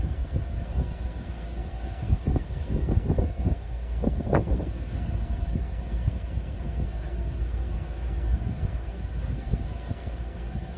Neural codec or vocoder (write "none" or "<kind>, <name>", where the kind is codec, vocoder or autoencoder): codec, SNAC